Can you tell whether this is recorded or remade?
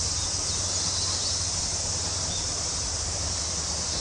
recorded